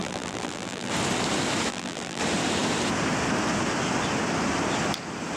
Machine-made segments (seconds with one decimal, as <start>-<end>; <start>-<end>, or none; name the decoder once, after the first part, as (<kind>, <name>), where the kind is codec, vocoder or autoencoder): 0.0-0.9 (vocoder, BigVGAN v2); 1.7-2.2